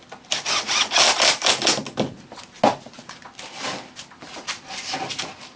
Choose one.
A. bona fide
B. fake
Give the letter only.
A